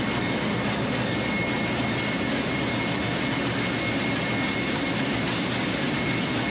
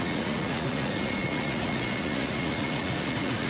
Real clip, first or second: first